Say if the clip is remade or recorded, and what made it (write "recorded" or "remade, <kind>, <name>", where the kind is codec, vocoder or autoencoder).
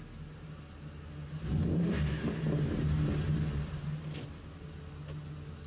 recorded